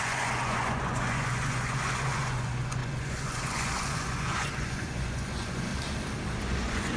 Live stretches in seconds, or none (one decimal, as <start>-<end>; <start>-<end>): 5.7-6.4